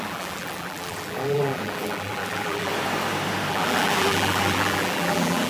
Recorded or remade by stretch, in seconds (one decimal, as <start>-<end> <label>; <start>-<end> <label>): 0.0-2.7 remade; 2.7-3.5 recorded; 3.5-5.5 remade